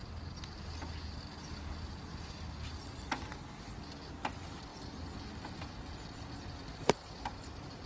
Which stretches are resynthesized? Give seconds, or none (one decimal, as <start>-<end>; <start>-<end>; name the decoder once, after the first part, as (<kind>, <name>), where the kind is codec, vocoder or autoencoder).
none